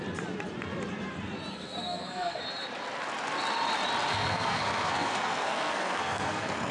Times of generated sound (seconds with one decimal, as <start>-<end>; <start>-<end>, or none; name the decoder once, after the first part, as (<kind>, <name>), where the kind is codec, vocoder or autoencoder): 1.5-2.4 (codec, SNAC); 4.1-6.7